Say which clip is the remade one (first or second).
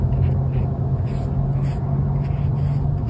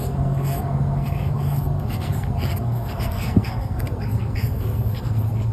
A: second